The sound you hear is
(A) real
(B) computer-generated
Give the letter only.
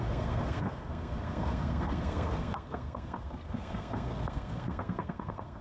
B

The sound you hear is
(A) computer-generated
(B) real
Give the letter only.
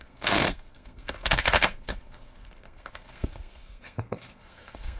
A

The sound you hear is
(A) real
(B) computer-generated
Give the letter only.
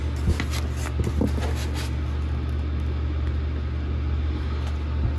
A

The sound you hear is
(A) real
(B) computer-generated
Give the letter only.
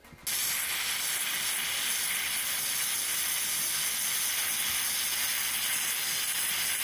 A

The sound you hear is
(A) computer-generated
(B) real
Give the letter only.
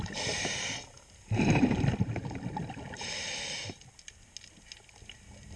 B